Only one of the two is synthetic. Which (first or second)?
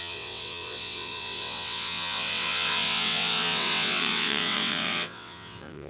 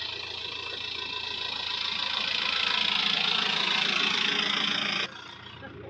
first